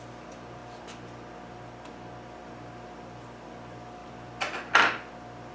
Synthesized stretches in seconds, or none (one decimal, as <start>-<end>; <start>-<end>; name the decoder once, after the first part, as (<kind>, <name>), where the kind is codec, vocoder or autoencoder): none